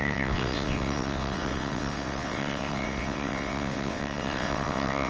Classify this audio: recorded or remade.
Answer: remade